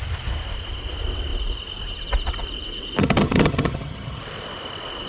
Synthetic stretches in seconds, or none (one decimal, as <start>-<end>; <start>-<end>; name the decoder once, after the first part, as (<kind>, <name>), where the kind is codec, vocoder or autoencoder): 3.0-4.2 (vocoder, HiFi-GAN)